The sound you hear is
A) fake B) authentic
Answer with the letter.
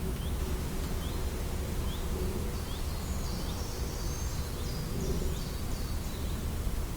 B